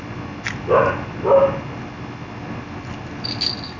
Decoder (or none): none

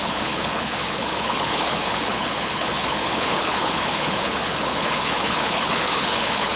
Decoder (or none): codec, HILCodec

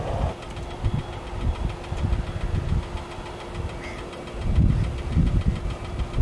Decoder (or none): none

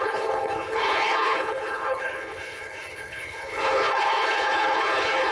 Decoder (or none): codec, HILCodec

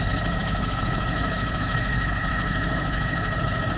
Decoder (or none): codec, HILCodec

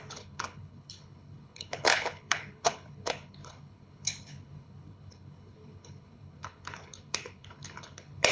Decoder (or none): codec, HILCodec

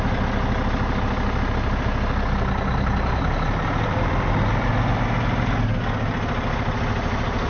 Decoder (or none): none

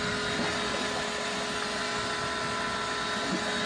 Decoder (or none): none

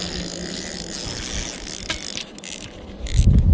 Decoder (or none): none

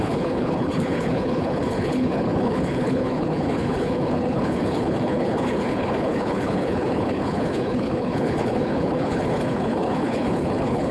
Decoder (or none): codec, HILCodec